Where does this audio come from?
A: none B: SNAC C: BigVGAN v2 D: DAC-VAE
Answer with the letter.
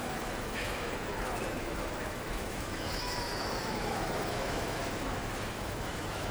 D